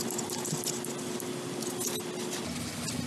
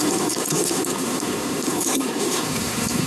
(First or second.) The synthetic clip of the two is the second